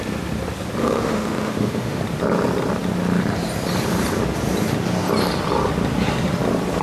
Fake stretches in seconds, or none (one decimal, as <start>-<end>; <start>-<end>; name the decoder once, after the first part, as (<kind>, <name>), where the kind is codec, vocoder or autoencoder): 0.8-2.0 (autoencoder, DAC-VAE)